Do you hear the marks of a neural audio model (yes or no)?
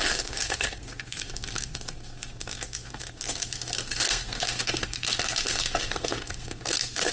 yes